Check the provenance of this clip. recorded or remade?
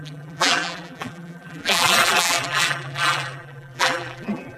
remade